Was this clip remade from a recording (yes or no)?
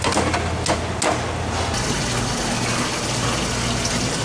no